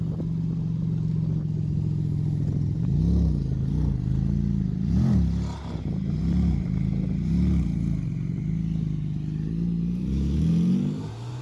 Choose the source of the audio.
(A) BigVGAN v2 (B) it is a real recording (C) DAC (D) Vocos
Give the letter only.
B